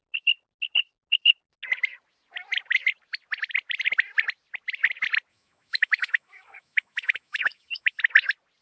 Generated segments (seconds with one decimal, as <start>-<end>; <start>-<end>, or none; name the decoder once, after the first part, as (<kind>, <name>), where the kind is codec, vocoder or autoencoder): 5.3-8.0 (autoencoder, DAC-VAE)